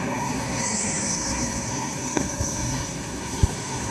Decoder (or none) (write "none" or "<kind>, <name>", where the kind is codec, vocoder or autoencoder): codec, SNAC